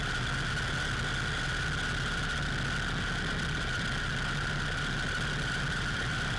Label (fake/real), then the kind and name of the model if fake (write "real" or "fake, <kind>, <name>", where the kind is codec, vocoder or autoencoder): real